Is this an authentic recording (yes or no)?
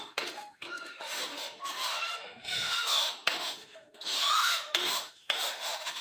no